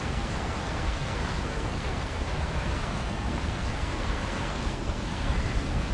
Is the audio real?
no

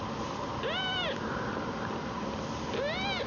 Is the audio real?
yes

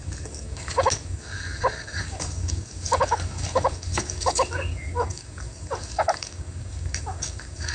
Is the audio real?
no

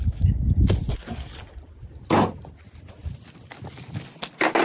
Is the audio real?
yes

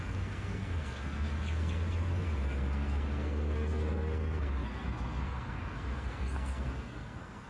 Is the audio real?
no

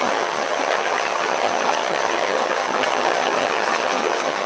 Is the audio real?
no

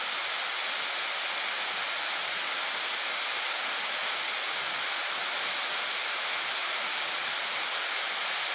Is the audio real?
yes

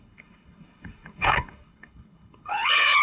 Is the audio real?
no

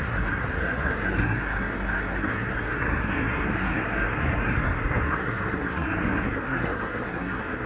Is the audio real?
no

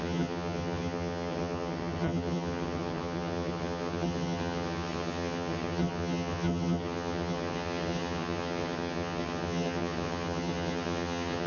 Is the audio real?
no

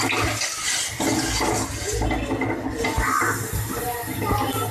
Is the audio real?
yes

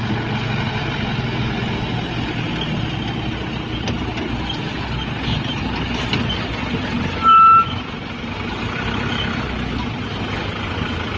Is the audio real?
yes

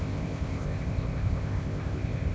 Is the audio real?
no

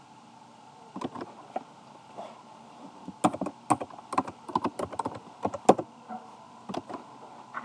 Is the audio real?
yes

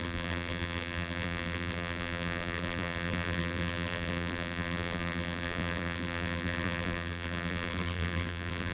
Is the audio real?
no